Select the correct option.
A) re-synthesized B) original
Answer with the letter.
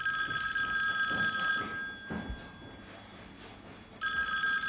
B